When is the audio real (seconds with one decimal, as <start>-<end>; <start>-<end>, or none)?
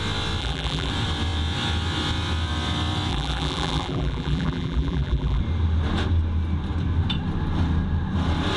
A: 0.0-0.4; 0.9-3.1; 5.4-8.6